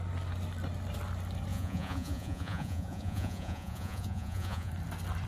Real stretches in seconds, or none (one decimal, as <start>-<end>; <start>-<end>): 0.0-1.5; 4.7-5.3